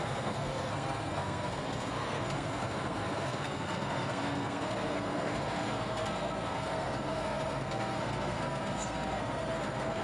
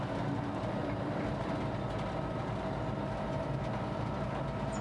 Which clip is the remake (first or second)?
first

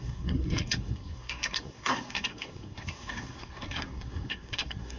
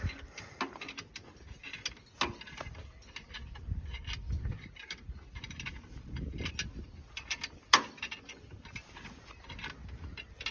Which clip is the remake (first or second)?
first